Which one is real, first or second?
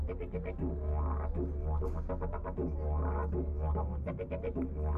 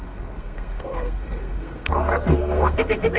first